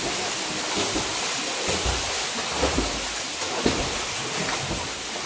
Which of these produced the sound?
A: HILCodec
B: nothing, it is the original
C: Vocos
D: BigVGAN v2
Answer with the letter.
B